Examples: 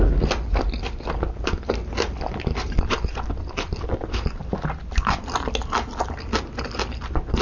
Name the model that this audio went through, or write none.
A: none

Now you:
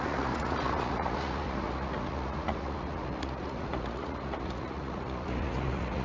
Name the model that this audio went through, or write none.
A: vocoder, Vocos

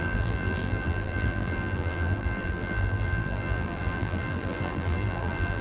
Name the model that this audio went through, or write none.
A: vocoder, BigVGAN v2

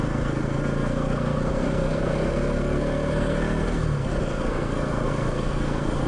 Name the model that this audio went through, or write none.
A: codec, SNAC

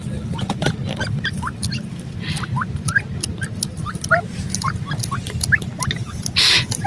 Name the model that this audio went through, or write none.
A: none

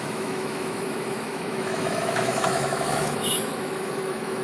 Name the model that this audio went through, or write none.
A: autoencoder, DAC-VAE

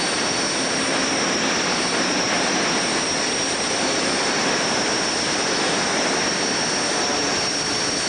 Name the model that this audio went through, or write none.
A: none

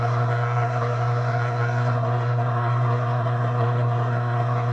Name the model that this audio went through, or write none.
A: codec, SNAC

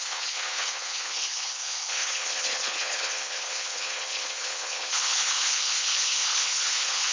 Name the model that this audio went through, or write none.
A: codec, HILCodec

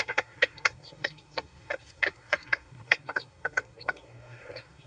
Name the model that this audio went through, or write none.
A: codec, SNAC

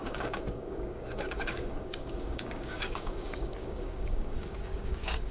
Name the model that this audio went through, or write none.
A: codec, DAC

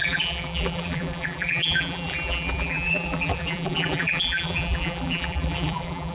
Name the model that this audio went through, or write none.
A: vocoder, BigVGAN v2